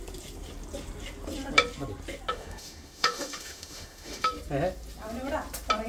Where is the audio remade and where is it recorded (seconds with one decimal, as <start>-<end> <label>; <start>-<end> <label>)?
0.0-2.3 recorded; 2.3-4.3 remade; 4.3-5.9 recorded